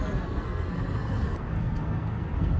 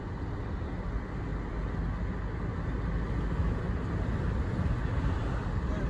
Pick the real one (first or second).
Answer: second